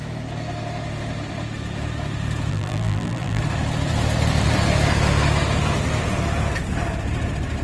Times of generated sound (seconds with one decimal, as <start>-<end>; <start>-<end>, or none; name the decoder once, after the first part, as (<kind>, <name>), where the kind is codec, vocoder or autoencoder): 2.5-3.4 (vocoder, BigVGAN v2)